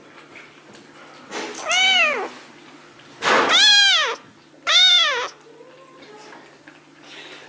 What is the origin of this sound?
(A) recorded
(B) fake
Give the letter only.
A